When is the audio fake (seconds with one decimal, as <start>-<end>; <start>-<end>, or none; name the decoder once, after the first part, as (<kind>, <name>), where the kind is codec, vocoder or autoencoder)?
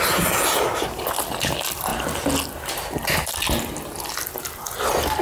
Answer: none